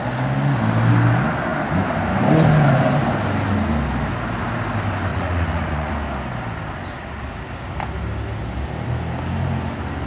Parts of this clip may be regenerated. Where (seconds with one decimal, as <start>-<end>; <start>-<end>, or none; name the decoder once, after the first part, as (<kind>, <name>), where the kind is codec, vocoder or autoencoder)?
5.1-5.9 (vocoder, Vocos)